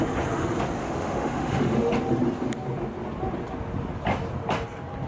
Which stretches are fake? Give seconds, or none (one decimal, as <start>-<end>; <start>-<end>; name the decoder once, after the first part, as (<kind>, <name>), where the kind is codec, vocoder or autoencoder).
0.8-1.9 (autoencoder, DAC-VAE)